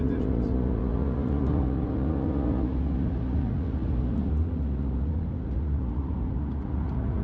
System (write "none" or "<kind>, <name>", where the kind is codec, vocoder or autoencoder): vocoder, Vocos